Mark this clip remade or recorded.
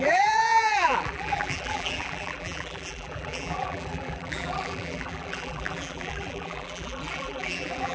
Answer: remade